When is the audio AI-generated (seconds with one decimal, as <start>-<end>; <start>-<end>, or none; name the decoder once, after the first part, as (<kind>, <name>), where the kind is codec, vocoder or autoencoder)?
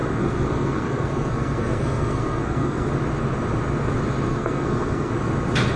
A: 0.0-2.9 (codec, SNAC); 4.3-5.1